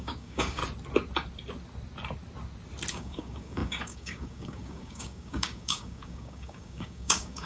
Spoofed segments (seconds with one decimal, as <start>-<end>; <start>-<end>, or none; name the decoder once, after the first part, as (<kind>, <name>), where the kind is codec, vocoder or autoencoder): 0.0-0.6 (codec, DAC); 2.9-7.5